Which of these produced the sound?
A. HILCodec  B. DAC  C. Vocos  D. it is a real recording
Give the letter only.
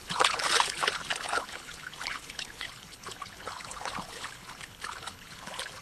A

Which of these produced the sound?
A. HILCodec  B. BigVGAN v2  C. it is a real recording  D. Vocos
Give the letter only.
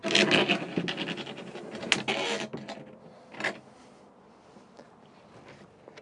C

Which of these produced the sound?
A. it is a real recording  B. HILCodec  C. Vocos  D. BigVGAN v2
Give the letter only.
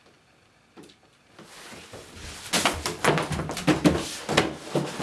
A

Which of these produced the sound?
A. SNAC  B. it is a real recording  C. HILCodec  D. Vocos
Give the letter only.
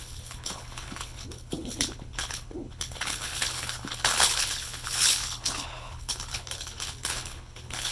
C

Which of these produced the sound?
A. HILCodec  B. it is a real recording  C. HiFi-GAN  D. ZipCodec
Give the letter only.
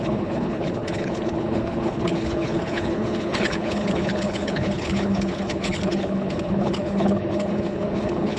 A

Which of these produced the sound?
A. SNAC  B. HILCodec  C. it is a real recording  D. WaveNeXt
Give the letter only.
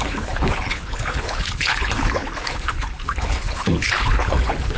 B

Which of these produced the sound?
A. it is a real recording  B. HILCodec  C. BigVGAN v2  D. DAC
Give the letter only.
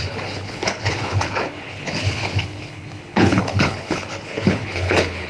B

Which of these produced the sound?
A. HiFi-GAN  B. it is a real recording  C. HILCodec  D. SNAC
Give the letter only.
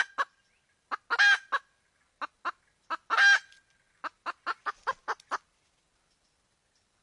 B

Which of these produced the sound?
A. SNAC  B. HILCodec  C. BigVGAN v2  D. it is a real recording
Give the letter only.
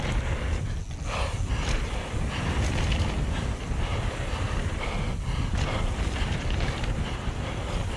D